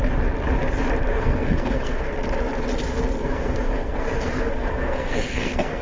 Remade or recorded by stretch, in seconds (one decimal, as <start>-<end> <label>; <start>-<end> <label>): 0.0-1.1 recorded; 1.1-2.1 remade; 2.1-3.2 recorded; 3.2-5.8 remade